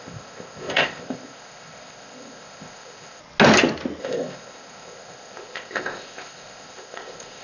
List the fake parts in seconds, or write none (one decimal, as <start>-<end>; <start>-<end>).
0.0-3.2; 4.0-7.4